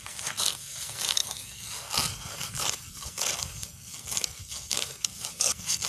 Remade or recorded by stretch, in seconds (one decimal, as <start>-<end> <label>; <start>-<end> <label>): 0.0-5.9 remade